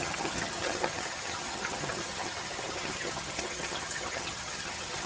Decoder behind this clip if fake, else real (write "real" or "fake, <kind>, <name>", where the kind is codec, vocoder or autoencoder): fake, vocoder, HiFi-GAN